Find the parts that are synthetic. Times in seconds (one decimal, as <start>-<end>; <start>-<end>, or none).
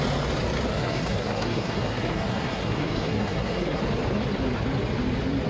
0.7-3.8